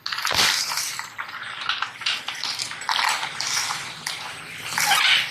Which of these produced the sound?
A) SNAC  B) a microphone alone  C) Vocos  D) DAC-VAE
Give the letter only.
B